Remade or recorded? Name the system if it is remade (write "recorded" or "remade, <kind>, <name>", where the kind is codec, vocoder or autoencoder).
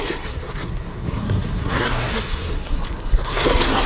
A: remade, codec, SNAC